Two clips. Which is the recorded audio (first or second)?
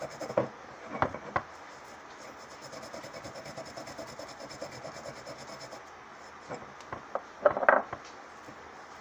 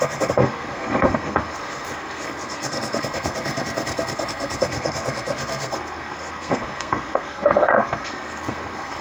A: first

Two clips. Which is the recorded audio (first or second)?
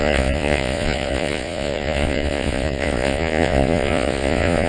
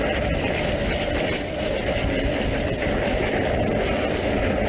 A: second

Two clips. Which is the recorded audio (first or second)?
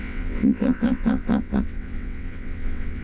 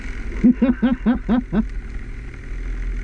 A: second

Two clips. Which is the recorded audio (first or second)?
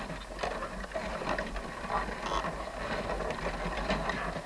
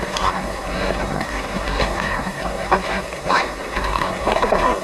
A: first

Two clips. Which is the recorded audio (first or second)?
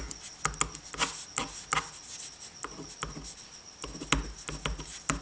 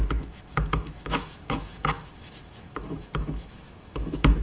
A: first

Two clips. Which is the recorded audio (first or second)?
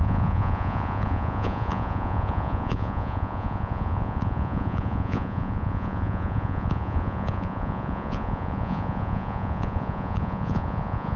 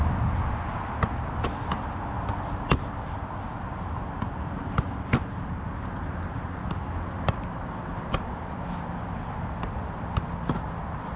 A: second